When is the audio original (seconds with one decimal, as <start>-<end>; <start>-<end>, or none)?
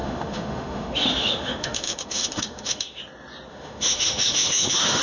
3.0-3.5